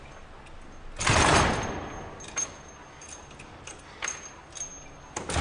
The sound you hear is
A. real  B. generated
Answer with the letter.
A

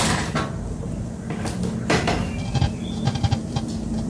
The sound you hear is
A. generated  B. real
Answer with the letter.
B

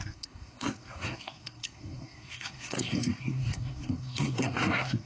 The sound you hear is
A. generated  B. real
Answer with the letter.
A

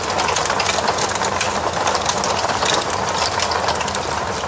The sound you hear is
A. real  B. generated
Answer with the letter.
A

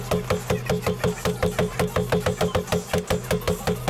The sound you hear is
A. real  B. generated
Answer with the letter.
A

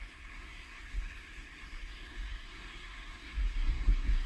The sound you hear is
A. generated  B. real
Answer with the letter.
A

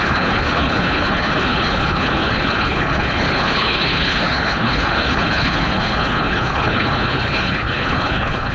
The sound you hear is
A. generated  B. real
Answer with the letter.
A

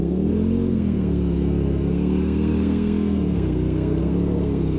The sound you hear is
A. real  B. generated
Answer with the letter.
B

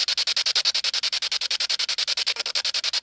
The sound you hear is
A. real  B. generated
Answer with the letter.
A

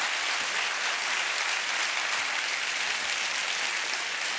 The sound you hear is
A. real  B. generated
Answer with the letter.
A